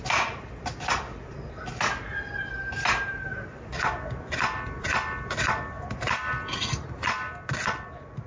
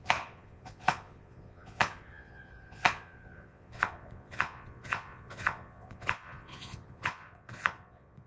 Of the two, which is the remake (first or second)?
second